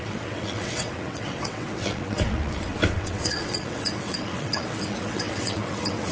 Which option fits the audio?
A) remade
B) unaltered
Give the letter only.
A